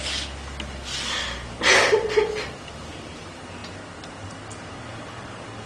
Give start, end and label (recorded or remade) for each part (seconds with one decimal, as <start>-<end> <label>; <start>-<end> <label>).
0.0-5.7 recorded